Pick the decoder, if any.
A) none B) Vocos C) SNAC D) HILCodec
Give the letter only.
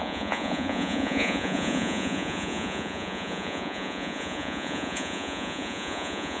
B